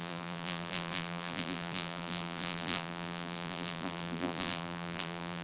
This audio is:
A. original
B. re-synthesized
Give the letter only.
B